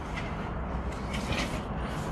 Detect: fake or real real